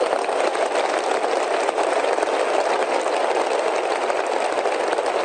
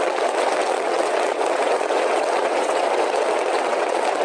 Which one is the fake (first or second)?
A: second